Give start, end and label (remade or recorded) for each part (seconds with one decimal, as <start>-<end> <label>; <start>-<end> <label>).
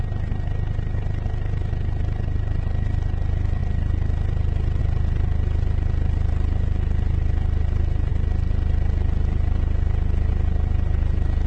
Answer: 0.0-11.5 recorded